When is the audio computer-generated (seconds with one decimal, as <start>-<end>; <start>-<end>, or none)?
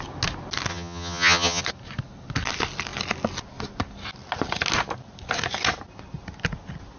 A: 0.7-1.6